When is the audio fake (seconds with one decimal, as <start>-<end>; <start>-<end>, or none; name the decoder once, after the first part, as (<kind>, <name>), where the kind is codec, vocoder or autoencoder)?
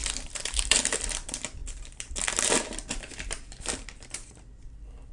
0.0-5.1 (vocoder, BigVGAN v2)